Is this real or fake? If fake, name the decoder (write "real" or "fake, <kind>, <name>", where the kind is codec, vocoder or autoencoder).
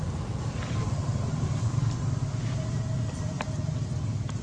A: real